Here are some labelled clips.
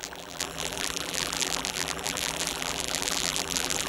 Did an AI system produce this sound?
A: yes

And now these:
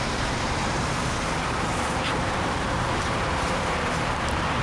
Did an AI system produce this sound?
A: yes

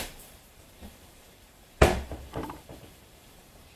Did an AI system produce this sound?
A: yes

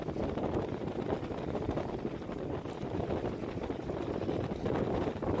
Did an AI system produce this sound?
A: no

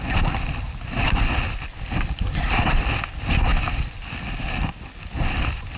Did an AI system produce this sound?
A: no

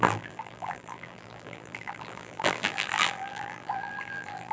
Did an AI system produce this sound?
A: yes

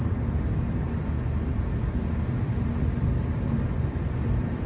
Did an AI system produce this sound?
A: yes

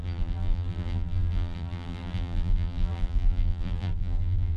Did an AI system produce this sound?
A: yes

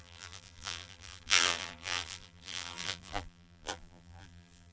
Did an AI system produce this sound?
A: yes